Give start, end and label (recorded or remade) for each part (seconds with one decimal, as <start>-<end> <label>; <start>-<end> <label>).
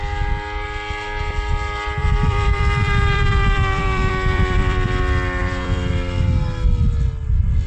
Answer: 0.0-2.0 recorded; 2.0-5.0 remade; 5.0-5.4 recorded; 5.4-5.9 remade; 5.9-7.7 recorded